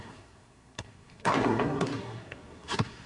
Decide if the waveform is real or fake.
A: fake